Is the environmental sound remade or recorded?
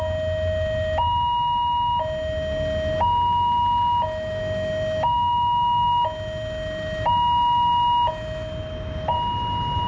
recorded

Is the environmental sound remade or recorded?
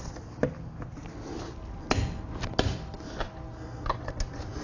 recorded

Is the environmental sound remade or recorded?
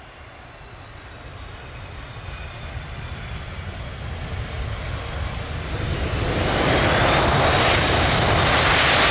recorded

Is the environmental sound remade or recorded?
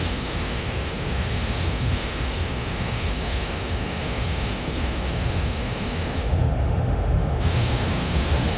remade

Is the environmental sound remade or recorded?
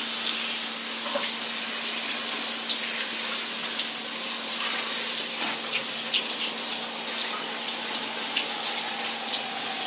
recorded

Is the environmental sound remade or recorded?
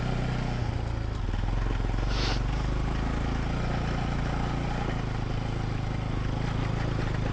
recorded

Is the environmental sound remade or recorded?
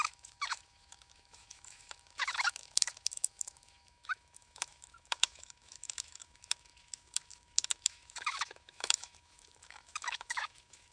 remade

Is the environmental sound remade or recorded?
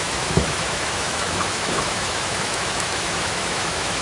remade